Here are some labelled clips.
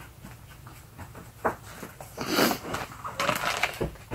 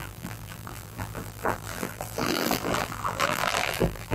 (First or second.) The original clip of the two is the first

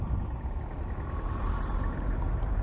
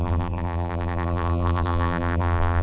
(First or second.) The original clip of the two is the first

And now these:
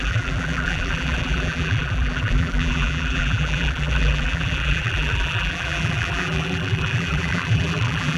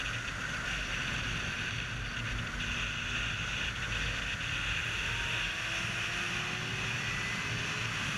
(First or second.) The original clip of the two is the second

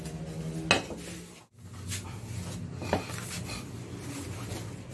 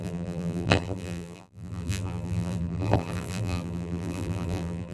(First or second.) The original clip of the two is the first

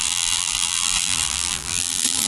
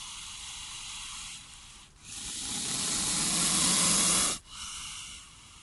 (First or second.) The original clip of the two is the second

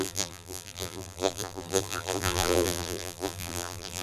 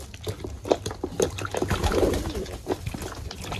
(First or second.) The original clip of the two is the second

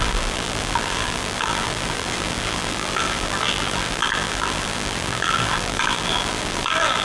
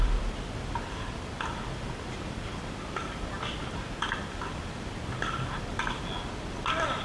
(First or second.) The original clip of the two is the second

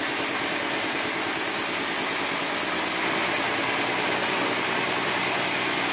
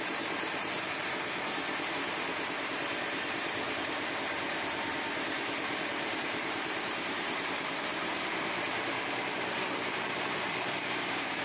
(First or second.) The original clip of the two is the first